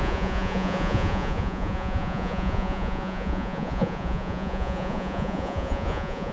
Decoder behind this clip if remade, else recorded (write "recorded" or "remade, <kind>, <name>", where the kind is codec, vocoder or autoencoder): remade, vocoder, Vocos